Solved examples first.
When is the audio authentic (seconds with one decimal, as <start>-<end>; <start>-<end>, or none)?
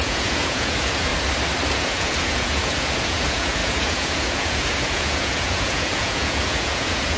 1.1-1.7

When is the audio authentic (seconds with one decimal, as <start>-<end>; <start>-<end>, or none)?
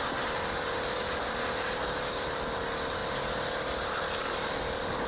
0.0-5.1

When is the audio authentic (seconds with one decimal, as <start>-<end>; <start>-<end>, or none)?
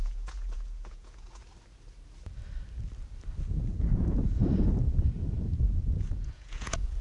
1.4-3.7; 4.4-5.6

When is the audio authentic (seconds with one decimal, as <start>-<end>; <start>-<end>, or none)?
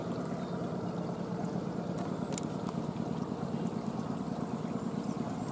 0.0-5.5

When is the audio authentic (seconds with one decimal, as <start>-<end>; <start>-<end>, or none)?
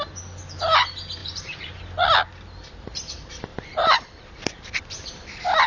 0.0-1.2; 1.8-3.5; 4.4-5.7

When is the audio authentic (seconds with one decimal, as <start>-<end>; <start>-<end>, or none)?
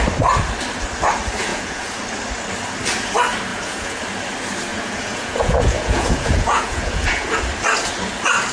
0.0-1.5; 2.0-3.5; 4.0-4.7; 7.3-8.5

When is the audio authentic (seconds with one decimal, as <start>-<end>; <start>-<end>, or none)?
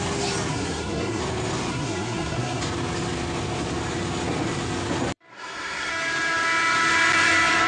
0.0-0.5; 1.2-1.7; 2.6-5.3; 5.9-7.7